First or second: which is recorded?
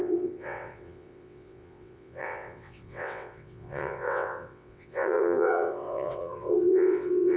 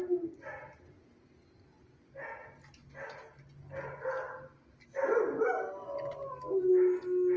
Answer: second